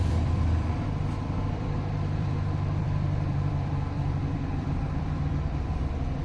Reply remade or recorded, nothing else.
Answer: remade